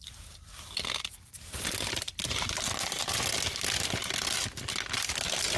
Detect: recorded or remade recorded